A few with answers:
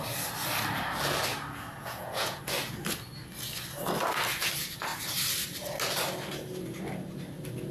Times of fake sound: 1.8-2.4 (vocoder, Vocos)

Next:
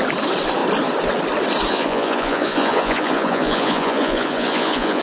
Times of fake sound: 1.7-5.0 (vocoder, Vocos)

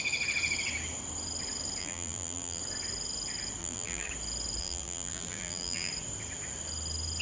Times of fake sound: 1.8-2.6 (vocoder, BigVGAN v2); 3.6-4.1; 4.6-5.9

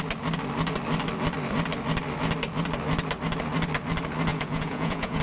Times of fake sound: 4.3-5.2 (vocoder, Vocos)

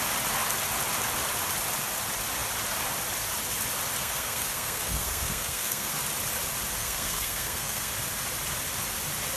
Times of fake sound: 4.0-5.9 (codec, SNAC); 6.8-7.9

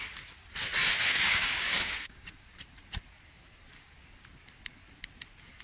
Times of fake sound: 0.8-2.3 (codec, DAC)